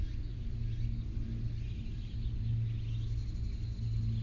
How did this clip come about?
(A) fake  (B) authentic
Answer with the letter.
B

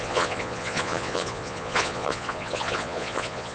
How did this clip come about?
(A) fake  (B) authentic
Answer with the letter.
A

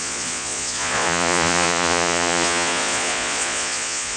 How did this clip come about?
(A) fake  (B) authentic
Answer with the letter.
A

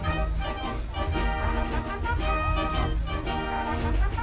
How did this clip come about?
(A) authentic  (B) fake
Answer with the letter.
A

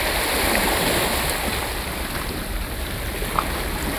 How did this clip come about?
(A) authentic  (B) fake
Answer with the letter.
A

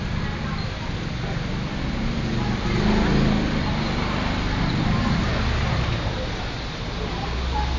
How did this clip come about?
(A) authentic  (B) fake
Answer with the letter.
A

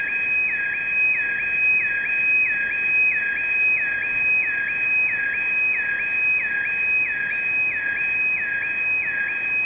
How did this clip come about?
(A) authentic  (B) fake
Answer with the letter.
A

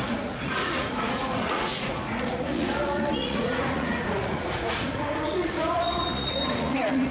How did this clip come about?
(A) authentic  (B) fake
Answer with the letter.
B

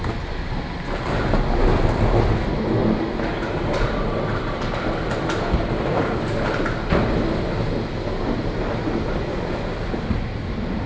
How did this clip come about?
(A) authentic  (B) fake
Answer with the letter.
A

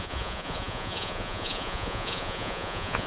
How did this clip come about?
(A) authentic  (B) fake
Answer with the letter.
B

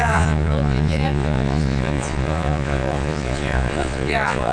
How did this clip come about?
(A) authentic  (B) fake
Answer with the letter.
B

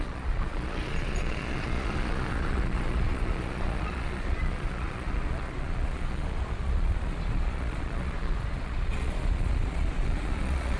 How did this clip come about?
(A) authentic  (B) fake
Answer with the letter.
B